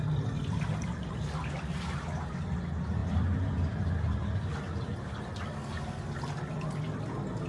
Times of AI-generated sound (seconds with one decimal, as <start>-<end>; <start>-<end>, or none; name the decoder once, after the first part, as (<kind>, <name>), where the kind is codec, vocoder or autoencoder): none